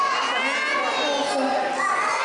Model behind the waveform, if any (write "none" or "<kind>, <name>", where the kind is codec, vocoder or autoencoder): none